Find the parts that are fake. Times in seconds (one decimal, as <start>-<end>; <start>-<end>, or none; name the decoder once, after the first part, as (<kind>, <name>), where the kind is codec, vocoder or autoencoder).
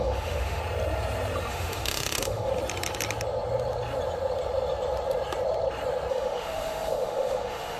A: 0.0-0.6 (autoencoder, DAC-VAE); 1.5-2.5; 6.1-7.8